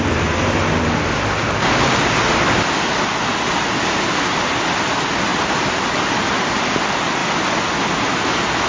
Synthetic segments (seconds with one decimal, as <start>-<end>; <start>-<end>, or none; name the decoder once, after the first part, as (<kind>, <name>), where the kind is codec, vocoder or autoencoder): none